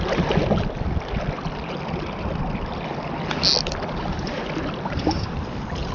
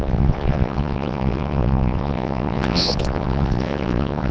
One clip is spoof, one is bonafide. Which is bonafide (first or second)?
first